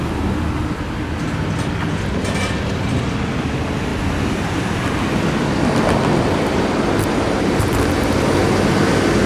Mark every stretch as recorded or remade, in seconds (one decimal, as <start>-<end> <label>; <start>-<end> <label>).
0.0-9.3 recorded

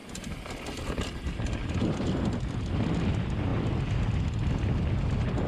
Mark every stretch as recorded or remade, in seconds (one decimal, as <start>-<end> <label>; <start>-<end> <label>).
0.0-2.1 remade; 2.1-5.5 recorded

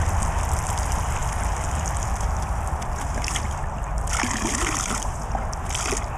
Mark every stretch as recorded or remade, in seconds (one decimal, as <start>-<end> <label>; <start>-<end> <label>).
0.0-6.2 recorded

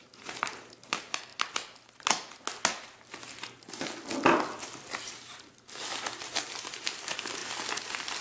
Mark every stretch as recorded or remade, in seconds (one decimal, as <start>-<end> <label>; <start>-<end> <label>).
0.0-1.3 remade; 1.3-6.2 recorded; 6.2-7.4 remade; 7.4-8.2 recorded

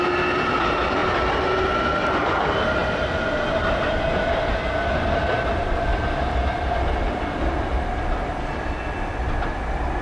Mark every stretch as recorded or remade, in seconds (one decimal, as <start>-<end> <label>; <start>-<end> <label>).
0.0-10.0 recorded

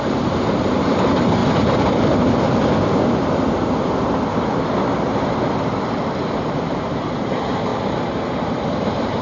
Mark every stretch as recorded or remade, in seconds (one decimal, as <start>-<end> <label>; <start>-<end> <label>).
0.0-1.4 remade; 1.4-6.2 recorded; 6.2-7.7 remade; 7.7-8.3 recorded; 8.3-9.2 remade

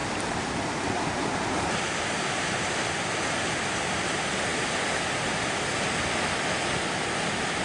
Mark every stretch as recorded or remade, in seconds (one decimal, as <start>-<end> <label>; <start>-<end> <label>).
0.0-2.7 remade; 2.7-7.6 recorded

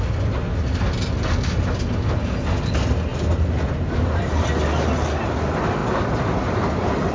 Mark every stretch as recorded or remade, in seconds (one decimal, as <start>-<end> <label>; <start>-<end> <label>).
0.0-3.1 recorded; 3.1-4.5 remade; 4.5-7.1 recorded